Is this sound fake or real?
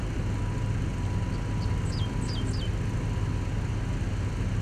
real